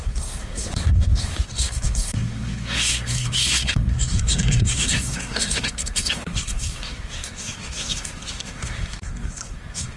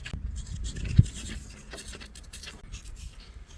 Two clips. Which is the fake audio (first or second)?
first